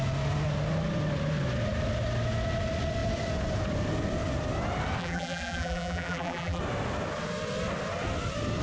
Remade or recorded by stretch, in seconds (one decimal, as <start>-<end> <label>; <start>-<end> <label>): 0.0-5.0 recorded; 5.0-6.6 remade; 6.6-8.6 recorded